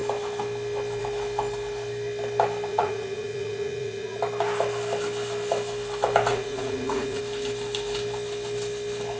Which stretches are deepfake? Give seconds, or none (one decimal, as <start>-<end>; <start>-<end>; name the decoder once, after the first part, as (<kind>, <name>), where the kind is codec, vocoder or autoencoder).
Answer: 2.7-4.2 (vocoder, Vocos); 6.3-7.2